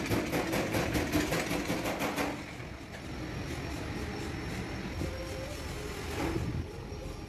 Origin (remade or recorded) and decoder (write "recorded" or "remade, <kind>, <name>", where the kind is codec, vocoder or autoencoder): recorded